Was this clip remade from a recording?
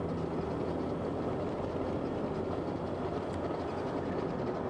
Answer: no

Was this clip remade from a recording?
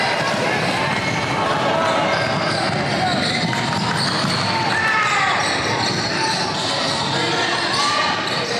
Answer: no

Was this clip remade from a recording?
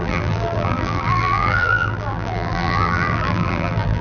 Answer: yes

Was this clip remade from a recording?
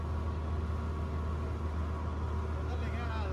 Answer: no